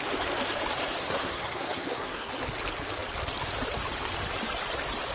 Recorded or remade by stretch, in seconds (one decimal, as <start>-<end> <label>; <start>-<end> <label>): 0.0-1.0 recorded; 1.0-2.3 remade; 2.3-5.1 recorded